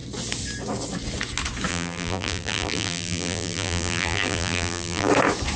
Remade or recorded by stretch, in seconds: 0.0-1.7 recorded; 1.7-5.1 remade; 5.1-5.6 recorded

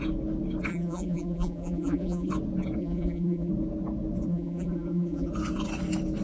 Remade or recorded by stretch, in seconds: 0.0-0.7 recorded; 0.7-2.3 remade; 2.3-2.8 recorded; 2.8-3.5 remade; 3.5-4.3 recorded; 4.3-5.3 remade; 5.3-6.2 recorded

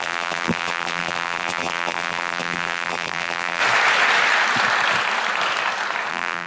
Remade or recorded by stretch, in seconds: 0.0-3.6 remade; 3.6-6.1 recorded; 6.1-6.5 remade

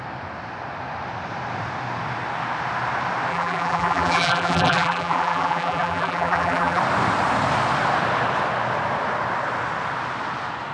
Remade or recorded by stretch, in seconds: 0.0-3.3 recorded; 3.3-6.8 remade; 6.8-10.7 recorded

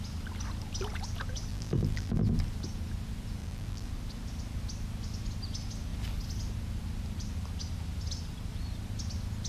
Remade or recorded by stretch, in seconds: 0.0-1.5 recorded; 1.5-2.3 remade; 2.3-3.4 recorded; 3.4-3.9 remade; 3.9-9.5 recorded

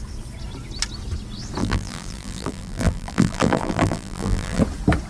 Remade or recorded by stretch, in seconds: 0.0-1.6 recorded; 1.6-4.6 remade; 4.6-5.1 recorded

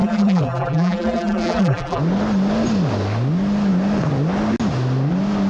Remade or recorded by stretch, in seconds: 0.0-2.0 remade; 2.0-5.5 recorded

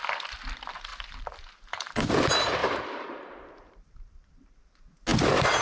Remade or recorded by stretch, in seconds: 0.0-0.9 recorded; 0.9-2.1 remade; 2.1-2.6 recorded; 2.6-4.6 remade; 4.6-5.6 recorded